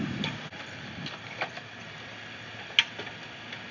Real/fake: real